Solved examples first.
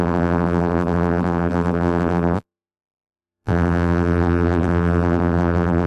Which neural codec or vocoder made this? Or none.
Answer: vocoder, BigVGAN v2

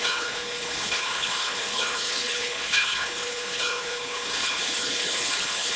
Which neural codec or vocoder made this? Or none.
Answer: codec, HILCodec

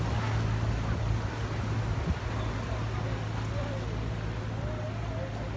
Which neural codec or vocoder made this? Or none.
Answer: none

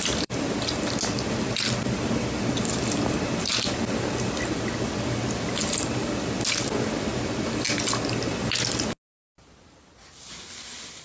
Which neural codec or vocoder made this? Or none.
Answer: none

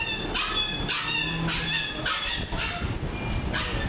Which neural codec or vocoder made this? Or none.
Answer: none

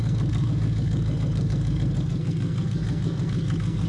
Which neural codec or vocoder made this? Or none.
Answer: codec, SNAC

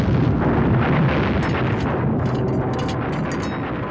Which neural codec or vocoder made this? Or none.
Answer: none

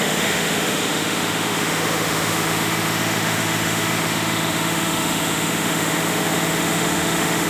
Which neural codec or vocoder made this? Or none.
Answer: autoencoder, DAC-VAE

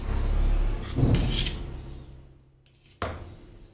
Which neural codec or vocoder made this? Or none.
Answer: none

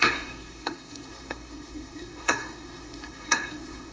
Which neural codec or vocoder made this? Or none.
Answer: codec, SNAC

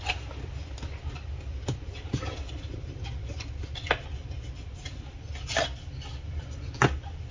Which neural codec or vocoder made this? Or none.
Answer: none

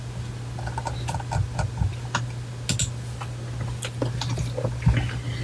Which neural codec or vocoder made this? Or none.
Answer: none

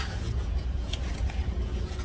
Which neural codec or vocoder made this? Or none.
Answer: vocoder, Vocos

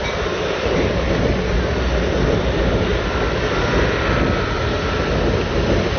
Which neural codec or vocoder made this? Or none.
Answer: none